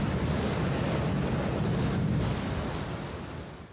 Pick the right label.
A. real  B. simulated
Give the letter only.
A